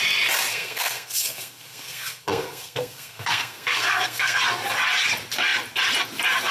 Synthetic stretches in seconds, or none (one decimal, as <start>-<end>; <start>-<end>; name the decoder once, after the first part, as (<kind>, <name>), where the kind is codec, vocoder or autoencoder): 0.5-4.4 (codec, SNAC)